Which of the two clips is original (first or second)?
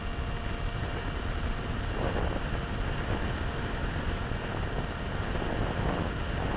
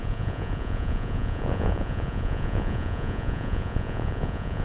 first